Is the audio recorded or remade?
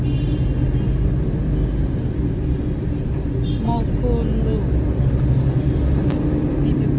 recorded